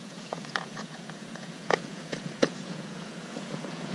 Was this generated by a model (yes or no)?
yes